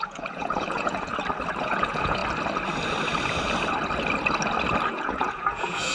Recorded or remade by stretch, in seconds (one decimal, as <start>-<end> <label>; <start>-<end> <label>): 0.0-1.1 remade; 1.1-1.6 recorded; 1.6-2.2 remade; 2.2-4.9 recorded; 4.9-5.9 remade